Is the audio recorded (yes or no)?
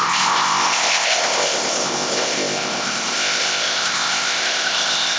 no